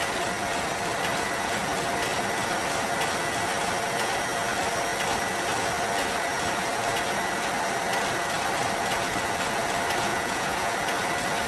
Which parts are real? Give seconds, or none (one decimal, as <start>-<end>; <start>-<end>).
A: 0.0-10.1; 10.7-11.5

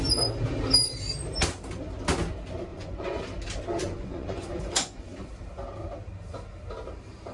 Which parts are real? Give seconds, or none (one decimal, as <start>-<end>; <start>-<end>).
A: 0.0-2.7; 3.2-3.8; 5.3-7.3

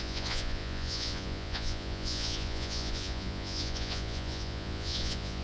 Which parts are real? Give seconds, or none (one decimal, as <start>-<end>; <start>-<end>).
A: none

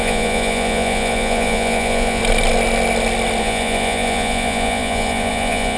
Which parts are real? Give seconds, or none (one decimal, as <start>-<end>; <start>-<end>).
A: 2.2-3.4

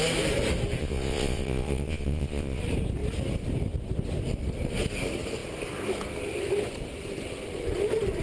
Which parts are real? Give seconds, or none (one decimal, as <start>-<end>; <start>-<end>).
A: 0.0-0.8; 2.6-8.2

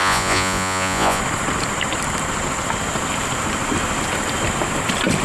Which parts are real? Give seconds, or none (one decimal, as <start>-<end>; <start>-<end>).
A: 1.2-5.2

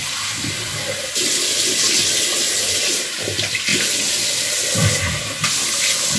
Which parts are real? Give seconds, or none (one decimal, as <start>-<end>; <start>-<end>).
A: 0.0-6.2